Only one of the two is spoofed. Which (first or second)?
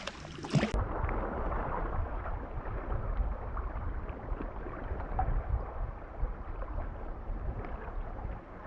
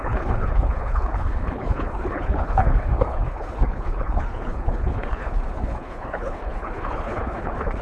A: second